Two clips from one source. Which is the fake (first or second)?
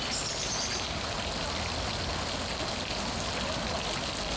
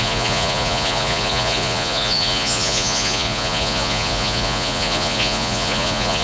second